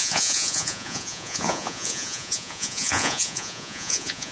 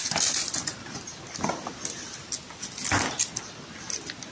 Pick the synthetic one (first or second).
first